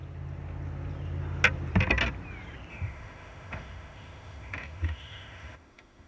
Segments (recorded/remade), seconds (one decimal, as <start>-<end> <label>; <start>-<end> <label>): 0.0-2.7 recorded; 2.7-6.1 remade